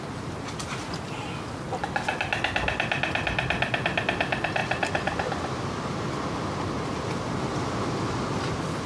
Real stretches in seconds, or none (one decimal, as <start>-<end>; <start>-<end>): 0.0-8.9